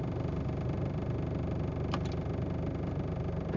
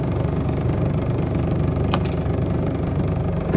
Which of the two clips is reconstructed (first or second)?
second